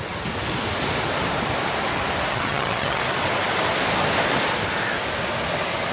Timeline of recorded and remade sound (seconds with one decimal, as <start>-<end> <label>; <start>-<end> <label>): 0.0-2.3 recorded; 2.3-3.0 remade; 3.0-5.9 recorded